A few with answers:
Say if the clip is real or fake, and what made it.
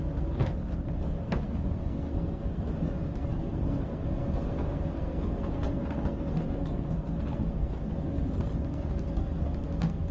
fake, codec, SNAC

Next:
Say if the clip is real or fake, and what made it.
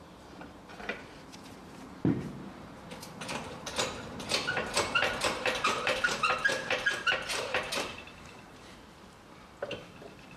fake, vocoder, BigVGAN v2